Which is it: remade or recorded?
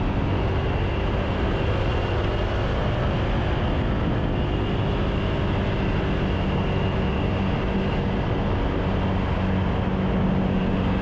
recorded